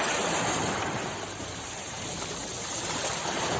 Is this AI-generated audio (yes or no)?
no